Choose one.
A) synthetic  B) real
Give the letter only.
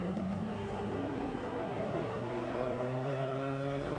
A